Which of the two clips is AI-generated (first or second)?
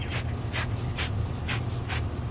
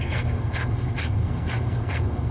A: second